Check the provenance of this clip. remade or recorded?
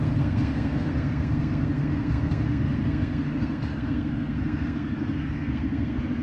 remade